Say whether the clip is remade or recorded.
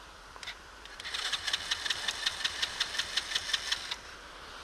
remade